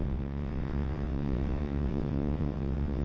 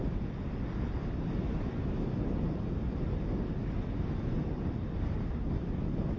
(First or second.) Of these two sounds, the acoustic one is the second